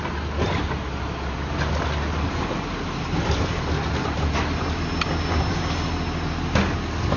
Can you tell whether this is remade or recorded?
recorded